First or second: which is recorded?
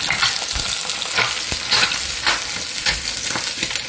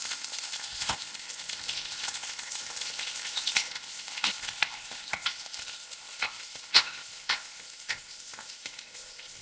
first